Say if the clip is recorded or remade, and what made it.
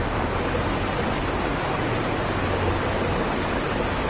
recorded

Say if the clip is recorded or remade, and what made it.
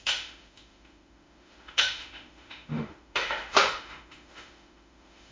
remade, autoencoder, DAC-VAE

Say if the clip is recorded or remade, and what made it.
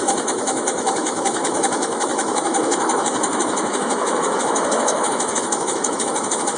remade, autoencoder, DAC-VAE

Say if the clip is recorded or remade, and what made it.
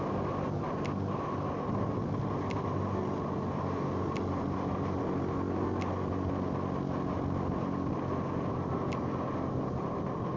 recorded